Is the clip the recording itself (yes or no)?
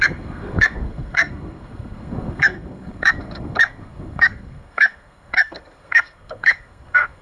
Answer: no